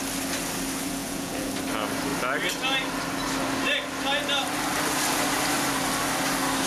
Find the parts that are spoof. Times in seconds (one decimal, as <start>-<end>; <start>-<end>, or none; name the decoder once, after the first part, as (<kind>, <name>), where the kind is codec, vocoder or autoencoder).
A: 1.0-1.5 (vocoder, Vocos)